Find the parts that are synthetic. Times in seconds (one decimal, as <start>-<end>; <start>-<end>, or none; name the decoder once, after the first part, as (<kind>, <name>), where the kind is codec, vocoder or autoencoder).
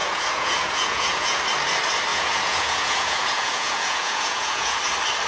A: 0.0-1.4 (vocoder, Vocos); 2.1-4.8